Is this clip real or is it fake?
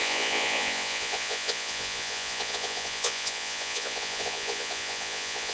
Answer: fake